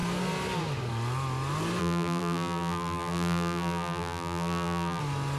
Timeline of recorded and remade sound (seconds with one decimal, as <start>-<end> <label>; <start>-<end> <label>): 0.0-1.8 recorded; 1.8-5.0 remade; 5.0-5.4 recorded